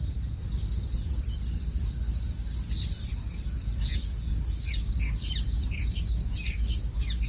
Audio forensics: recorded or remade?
recorded